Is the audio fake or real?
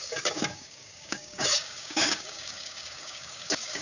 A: fake